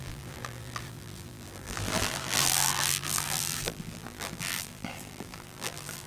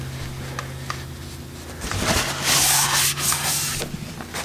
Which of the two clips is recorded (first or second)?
second